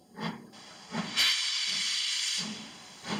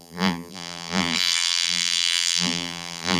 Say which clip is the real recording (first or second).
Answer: first